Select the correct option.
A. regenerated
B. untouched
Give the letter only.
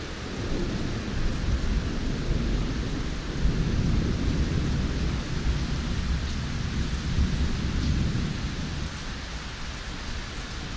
B